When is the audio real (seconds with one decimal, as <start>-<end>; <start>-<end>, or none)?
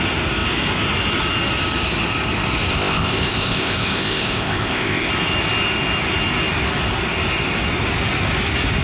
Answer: 0.0-2.7; 5.1-8.8